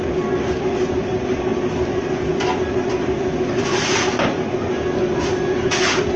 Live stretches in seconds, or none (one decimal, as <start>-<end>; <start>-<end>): 0.0-6.2